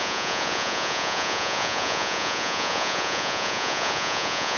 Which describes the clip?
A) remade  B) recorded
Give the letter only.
A